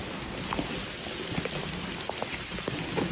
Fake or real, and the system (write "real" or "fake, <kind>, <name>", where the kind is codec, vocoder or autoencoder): real